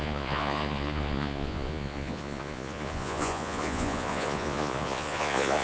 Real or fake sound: fake